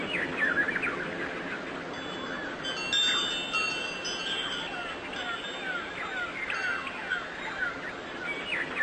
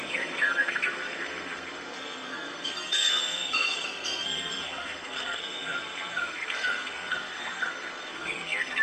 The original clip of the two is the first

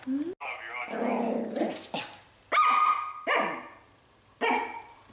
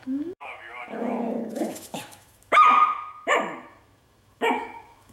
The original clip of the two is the first